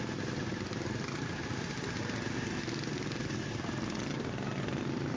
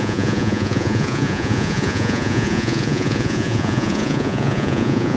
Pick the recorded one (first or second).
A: first